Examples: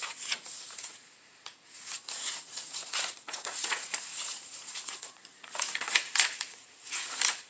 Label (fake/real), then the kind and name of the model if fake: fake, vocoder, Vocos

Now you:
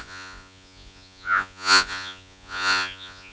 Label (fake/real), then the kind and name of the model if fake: fake, vocoder, Vocos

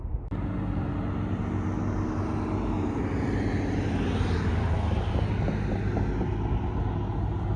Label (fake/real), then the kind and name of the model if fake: real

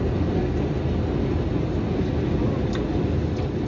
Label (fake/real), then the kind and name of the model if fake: real